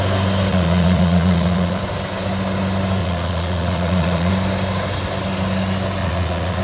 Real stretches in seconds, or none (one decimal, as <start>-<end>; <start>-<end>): 0.0-0.5; 1.8-3.0; 4.3-6.0